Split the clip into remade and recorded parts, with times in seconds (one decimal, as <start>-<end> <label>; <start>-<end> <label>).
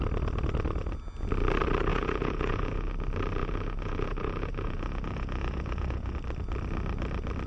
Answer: 0.0-1.9 recorded; 1.9-2.9 remade; 2.9-3.4 recorded; 3.4-6.2 remade; 6.2-7.5 recorded